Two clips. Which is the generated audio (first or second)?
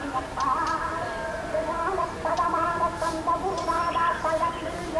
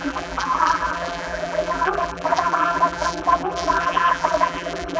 second